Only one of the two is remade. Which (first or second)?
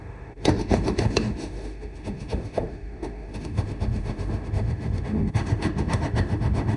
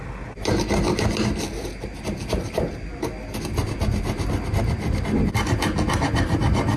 first